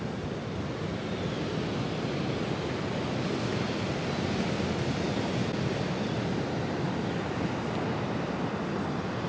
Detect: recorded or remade recorded